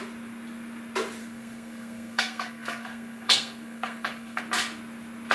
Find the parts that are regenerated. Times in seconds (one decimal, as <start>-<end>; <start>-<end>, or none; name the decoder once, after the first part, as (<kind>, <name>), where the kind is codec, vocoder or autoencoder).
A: 1.2-4.4 (codec, SNAC)